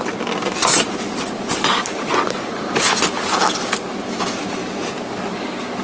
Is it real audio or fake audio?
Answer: real